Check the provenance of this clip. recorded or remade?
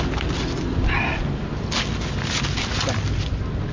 recorded